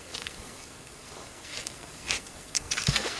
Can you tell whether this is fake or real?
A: fake